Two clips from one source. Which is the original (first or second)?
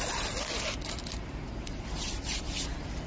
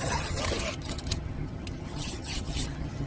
first